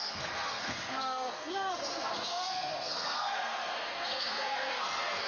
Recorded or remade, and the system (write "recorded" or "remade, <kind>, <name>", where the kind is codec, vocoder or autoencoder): remade, codec, SNAC